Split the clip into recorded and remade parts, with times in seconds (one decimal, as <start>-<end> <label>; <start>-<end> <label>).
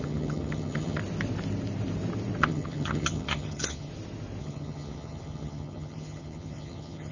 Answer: 0.0-1.0 remade; 1.0-2.4 recorded; 2.4-3.9 remade; 3.9-4.4 recorded; 4.4-7.1 remade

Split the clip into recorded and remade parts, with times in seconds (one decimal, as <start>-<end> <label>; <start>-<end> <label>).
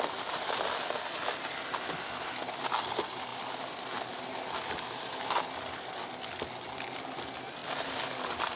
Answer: 0.0-8.6 recorded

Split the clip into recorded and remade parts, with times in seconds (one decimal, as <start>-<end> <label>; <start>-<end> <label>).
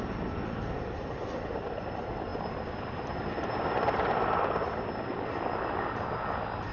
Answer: 0.0-6.7 recorded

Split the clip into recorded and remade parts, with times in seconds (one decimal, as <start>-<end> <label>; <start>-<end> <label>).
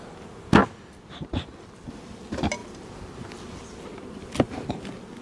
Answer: 0.0-5.2 recorded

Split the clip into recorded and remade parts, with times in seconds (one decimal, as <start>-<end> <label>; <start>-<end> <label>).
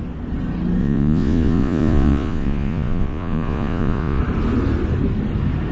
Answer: 0.0-0.8 recorded; 0.8-4.2 remade; 4.2-5.7 recorded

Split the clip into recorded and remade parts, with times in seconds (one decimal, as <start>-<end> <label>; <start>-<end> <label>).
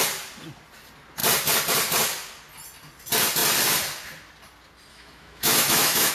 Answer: 0.0-4.9 recorded; 4.9-6.1 remade